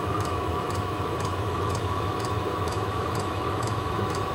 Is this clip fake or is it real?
fake